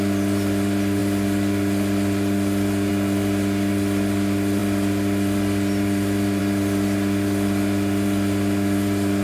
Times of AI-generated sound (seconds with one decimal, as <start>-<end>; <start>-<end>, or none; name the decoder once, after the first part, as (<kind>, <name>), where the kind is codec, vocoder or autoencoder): 1.0-2.9 (vocoder, BigVGAN v2); 4.6-6.4